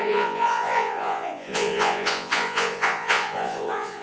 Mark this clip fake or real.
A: fake